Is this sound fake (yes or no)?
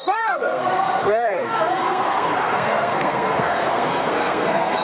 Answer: yes